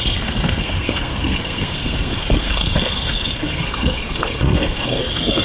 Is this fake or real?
fake